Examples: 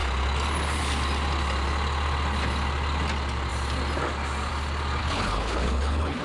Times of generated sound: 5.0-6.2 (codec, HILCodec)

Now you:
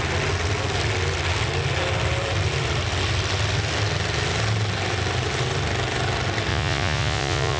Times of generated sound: 6.5-7.6 (vocoder, Vocos)